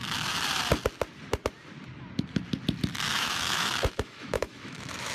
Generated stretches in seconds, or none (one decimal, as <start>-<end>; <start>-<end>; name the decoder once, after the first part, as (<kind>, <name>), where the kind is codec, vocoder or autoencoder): 3.1-5.1 (autoencoder, DAC-VAE)